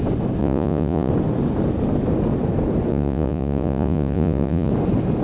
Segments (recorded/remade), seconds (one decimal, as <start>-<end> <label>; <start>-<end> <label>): 0.0-0.4 recorded; 0.4-1.1 remade; 1.1-2.9 recorded; 2.9-4.7 remade; 4.7-5.2 recorded